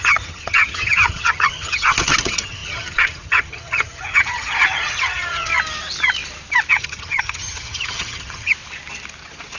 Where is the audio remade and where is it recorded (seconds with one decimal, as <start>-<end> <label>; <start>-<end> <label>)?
0.0-5.5 remade; 5.5-6.7 recorded; 6.7-8.5 remade; 8.5-9.6 recorded